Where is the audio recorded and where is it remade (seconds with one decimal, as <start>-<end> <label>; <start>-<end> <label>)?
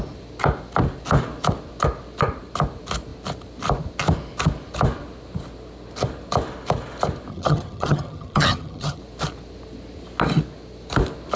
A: 0.0-7.3 recorded; 7.3-9.0 remade; 9.0-11.4 recorded